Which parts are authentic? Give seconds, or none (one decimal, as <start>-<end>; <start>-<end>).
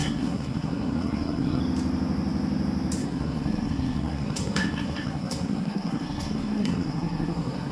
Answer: 1.6-3.0